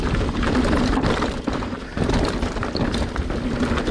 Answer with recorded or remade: remade